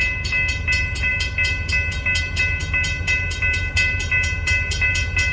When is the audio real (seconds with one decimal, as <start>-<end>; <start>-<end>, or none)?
0.0-5.3